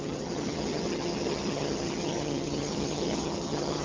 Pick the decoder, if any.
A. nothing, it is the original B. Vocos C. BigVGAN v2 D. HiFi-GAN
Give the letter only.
D